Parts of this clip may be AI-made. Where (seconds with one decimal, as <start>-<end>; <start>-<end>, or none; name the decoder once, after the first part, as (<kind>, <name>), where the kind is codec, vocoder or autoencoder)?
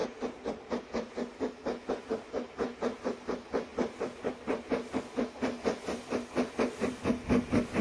none